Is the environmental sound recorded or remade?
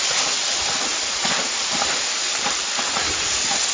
recorded